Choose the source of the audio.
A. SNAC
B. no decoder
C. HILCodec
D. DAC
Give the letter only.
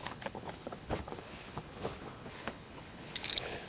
C